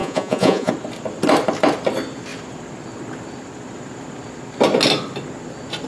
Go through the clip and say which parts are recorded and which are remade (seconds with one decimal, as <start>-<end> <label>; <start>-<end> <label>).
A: 0.0-0.7 remade; 0.7-5.9 recorded